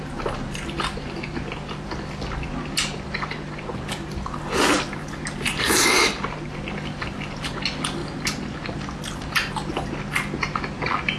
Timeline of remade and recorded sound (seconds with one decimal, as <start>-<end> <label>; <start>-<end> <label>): 0.0-11.2 recorded

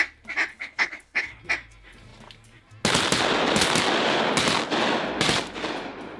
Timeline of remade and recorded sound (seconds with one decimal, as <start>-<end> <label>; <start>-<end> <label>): 0.0-0.5 recorded; 0.5-1.4 remade; 1.4-6.2 recorded

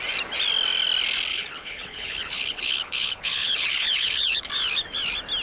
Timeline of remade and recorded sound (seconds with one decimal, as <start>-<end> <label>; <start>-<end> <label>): 0.0-1.3 recorded; 1.3-4.5 remade; 4.5-5.4 recorded

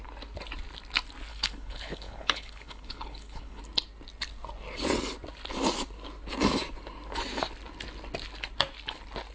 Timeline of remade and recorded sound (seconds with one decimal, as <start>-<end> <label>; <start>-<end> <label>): 0.0-1.3 recorded; 1.3-3.6 remade; 3.6-9.3 recorded

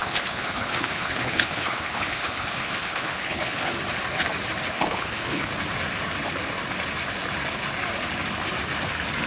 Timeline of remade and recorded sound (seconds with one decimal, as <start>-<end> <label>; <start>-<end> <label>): 0.0-3.7 remade; 3.7-4.7 recorded; 4.7-5.5 remade; 5.5-9.3 recorded